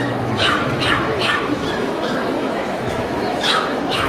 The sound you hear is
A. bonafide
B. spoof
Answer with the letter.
B